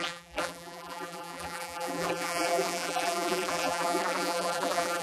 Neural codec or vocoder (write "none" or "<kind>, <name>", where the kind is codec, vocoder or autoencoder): vocoder, BigVGAN v2